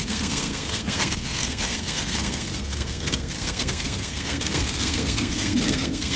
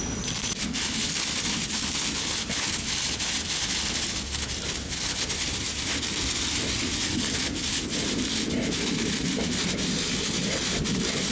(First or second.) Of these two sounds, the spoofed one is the first